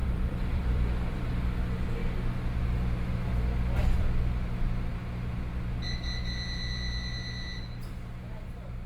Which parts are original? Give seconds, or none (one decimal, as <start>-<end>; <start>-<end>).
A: 1.4-8.9

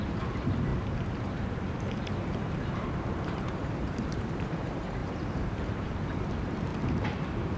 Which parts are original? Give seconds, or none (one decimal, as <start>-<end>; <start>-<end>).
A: 6.7-7.6

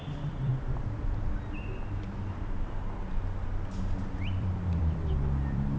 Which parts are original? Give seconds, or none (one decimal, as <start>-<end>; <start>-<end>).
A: 0.5-4.0

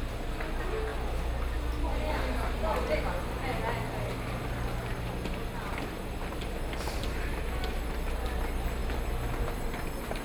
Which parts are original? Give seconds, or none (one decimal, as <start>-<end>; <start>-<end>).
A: 0.0-10.2